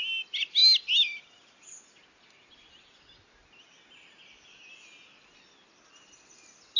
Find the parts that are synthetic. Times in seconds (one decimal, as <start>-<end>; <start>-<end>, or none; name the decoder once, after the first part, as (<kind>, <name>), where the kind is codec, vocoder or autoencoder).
none